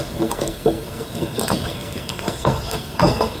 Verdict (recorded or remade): remade